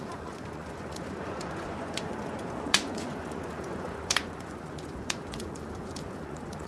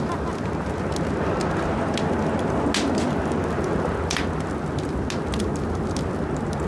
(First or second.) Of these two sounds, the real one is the second